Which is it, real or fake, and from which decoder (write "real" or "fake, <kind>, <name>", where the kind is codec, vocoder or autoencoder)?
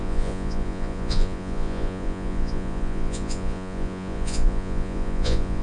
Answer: fake, vocoder, Vocos